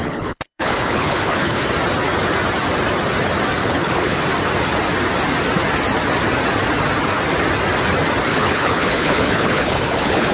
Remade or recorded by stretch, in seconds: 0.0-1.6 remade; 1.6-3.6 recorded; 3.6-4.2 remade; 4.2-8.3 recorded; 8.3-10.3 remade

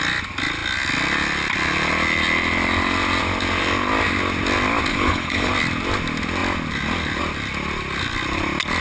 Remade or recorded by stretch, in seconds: 0.0-4.9 recorded; 4.9-5.5 remade; 5.5-8.8 recorded

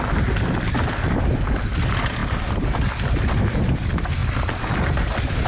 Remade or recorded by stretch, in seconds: 0.0-5.5 recorded